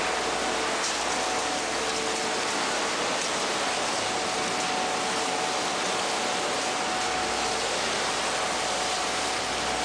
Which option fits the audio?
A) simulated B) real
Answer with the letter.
B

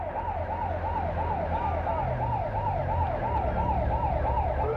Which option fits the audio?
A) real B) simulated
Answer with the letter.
A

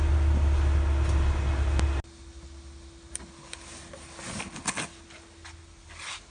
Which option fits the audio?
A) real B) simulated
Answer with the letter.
A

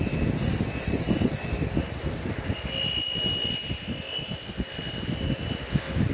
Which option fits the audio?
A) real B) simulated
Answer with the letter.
A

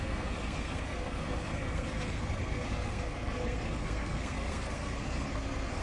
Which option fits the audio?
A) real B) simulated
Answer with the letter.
B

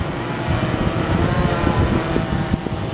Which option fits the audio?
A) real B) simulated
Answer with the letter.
A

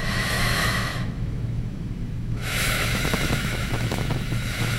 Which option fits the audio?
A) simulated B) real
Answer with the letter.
A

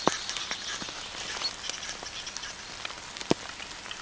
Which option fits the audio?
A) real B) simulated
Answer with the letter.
A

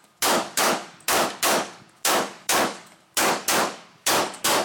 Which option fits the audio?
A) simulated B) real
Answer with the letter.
A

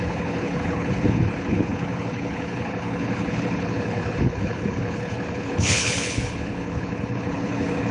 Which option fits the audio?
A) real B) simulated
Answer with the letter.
B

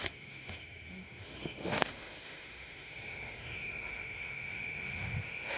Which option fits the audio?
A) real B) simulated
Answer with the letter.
B